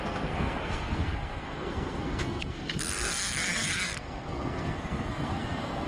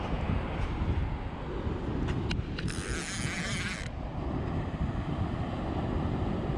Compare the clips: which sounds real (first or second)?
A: second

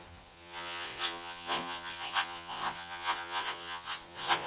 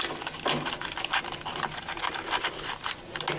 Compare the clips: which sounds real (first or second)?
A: second